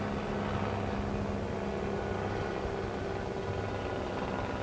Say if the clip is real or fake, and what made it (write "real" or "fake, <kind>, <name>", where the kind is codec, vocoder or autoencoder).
real